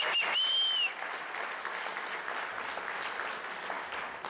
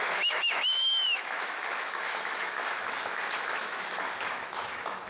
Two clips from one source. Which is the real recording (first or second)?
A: first